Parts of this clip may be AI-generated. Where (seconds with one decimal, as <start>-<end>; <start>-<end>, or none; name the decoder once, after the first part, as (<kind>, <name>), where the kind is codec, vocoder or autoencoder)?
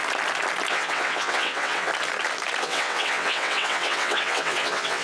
0.7-1.9 (vocoder, WaveNeXt); 2.6-5.0